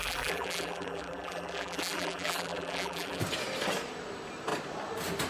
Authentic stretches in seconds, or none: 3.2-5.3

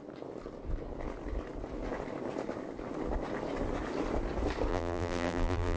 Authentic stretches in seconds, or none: 0.0-4.7

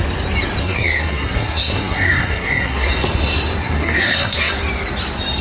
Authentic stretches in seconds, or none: 0.0-0.6; 2.9-3.6; 4.5-5.4